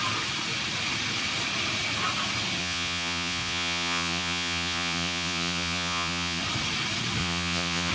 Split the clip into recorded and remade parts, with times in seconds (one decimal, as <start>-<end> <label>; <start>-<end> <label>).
0.0-2.6 recorded; 2.6-6.4 remade; 6.4-7.2 recorded; 7.2-7.9 remade